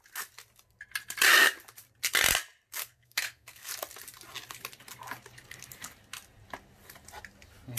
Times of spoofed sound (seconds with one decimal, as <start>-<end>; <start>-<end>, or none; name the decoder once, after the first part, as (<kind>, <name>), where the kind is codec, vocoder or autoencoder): 2.8-3.7 (codec, SNAC)